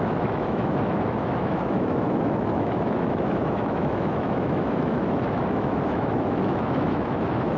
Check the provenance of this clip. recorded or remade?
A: remade